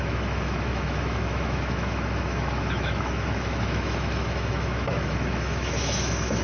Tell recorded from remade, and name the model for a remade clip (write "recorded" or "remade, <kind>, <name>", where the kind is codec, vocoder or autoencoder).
remade, autoencoder, DAC-VAE